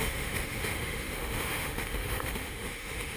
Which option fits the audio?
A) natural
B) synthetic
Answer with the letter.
B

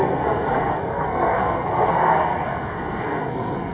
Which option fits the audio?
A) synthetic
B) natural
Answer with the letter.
A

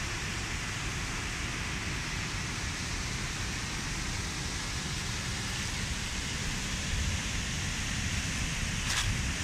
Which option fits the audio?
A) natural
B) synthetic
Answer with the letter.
A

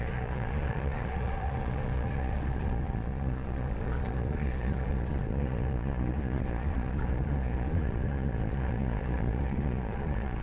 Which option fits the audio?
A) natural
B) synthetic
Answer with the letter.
B